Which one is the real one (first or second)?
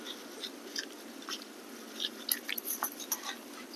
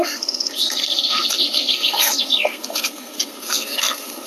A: first